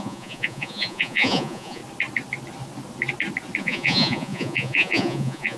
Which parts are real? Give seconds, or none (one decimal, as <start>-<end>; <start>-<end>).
1.8-3.6